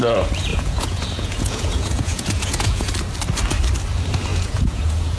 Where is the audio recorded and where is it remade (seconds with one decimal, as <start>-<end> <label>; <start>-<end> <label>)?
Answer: 0.0-0.5 recorded; 0.5-2.9 remade; 2.9-4.3 recorded; 4.3-5.2 remade